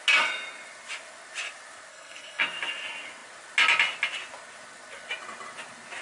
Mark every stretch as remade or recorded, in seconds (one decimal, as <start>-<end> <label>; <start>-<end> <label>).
0.0-1.9 recorded; 1.9-2.4 remade; 2.4-6.0 recorded